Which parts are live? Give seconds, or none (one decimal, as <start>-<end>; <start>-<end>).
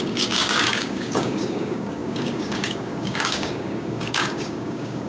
none